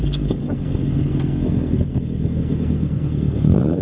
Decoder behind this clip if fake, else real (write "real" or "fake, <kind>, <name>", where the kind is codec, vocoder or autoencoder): fake, codec, SNAC